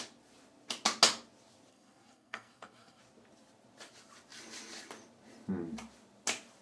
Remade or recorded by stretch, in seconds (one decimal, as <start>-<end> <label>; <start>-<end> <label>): 0.0-1.7 recorded; 1.7-3.0 remade; 3.0-6.6 recorded

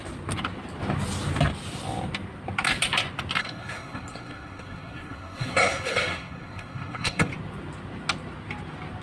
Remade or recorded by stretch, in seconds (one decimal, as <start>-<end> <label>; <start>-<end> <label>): 0.0-3.4 recorded; 3.4-7.3 remade; 7.3-9.0 recorded

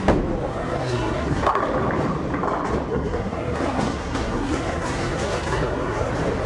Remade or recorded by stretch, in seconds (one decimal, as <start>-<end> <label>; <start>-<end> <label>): 0.0-0.5 recorded; 0.5-1.6 remade; 1.6-2.9 recorded; 2.9-6.1 remade; 6.1-6.5 recorded

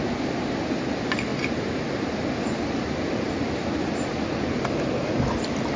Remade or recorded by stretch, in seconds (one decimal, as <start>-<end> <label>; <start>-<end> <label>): 0.0-5.8 recorded

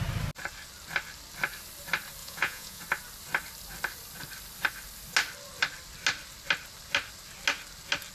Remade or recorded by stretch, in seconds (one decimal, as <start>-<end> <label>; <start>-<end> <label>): 0.0-2.2 recorded; 2.2-2.8 remade; 2.8-8.1 recorded

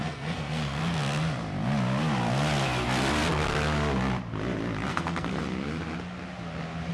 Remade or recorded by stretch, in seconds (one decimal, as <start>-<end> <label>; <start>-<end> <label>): 0.0-0.8 remade; 0.8-4.9 recorded; 4.9-5.4 remade; 5.4-6.9 recorded